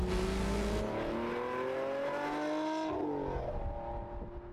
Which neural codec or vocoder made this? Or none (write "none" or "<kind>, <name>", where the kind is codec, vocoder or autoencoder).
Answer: none